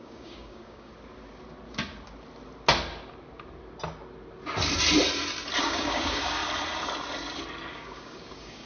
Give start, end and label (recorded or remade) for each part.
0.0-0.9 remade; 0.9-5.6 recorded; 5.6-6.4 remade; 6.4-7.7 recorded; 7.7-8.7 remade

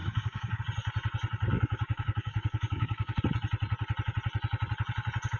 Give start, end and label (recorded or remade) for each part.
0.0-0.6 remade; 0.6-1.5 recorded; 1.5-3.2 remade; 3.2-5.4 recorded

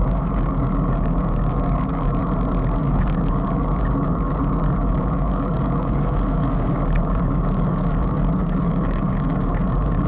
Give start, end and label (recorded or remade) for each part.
0.0-2.2 remade; 2.2-2.8 recorded; 2.8-10.1 remade

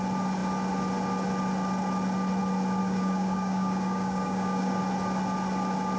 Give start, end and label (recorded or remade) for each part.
0.0-2.8 recorded; 2.8-4.8 remade; 4.8-6.0 recorded